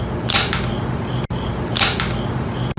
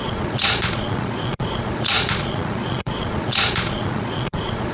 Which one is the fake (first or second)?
second